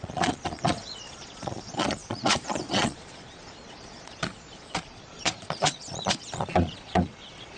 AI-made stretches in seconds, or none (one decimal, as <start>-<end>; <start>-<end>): 0.0-7.6